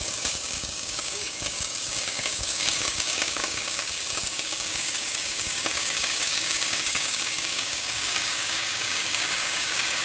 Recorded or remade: remade